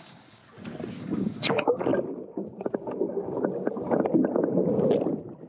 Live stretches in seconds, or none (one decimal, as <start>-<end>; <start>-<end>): 0.4-1.0; 1.9-5.5